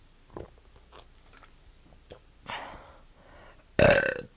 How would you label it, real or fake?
real